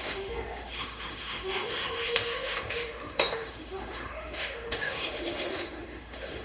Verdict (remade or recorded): remade